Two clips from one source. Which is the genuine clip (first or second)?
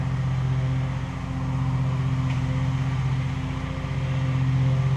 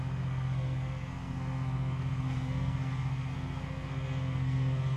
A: first